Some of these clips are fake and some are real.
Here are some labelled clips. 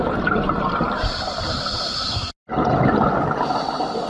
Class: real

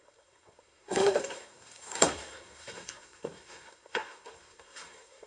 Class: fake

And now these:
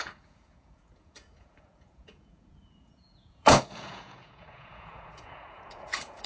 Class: fake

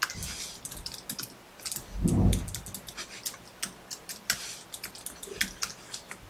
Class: real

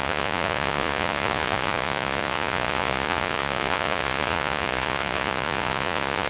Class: fake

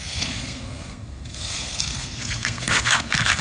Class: fake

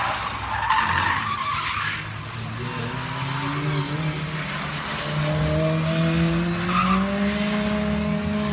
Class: real